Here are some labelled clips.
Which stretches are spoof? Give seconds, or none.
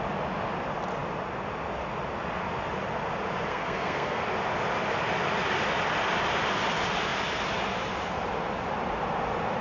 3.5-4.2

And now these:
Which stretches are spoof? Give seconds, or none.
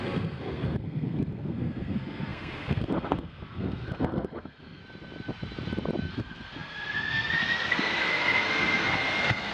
0.0-4.8; 6.1-9.5